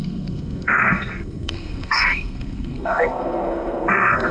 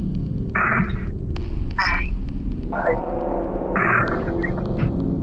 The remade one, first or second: first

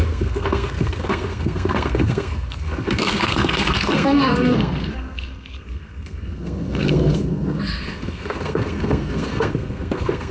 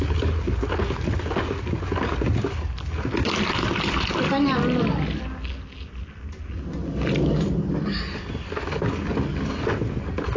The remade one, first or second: first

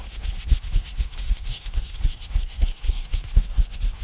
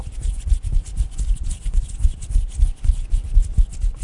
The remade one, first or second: first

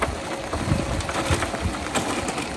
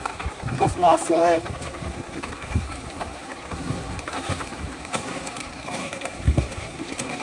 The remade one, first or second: second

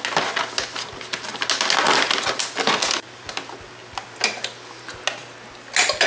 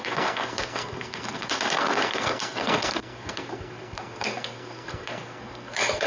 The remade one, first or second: second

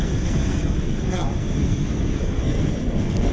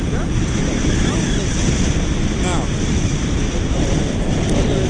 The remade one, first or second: first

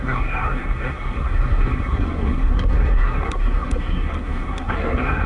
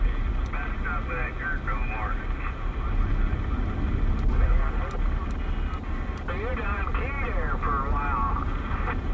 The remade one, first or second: first